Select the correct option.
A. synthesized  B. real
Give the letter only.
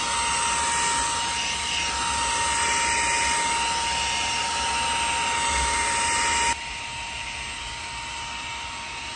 B